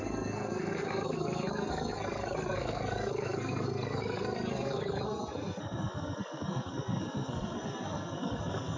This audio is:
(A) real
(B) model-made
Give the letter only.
B